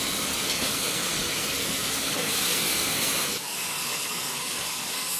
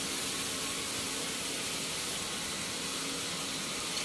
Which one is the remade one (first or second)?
first